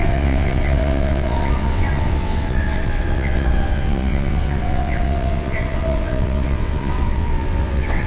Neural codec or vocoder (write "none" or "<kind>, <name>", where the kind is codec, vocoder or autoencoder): vocoder, WaveNeXt